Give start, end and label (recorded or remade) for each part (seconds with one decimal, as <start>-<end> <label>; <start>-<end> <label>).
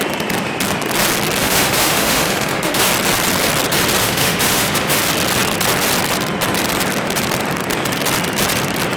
0.0-1.4 recorded; 1.4-2.9 remade; 2.9-4.0 recorded; 4.0-5.0 remade; 5.0-9.0 recorded